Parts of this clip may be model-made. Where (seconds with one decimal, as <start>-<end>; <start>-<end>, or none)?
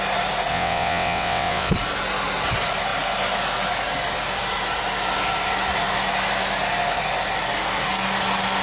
0.5-1.7